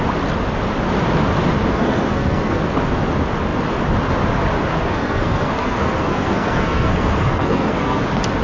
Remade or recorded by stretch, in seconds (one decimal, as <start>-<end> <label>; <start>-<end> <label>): 0.0-1.7 recorded; 1.7-2.6 remade; 2.6-4.7 recorded; 4.7-8.0 remade; 8.0-8.4 recorded